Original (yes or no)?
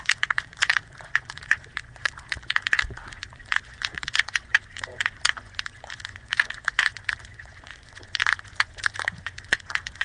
no